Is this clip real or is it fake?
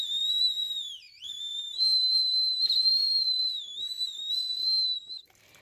real